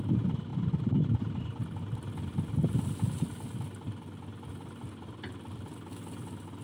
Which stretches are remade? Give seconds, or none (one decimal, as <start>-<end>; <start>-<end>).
none